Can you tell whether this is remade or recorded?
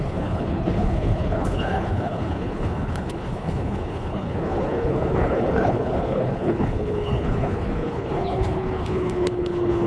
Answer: remade